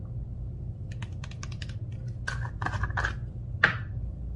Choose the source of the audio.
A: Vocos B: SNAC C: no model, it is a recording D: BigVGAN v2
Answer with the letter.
C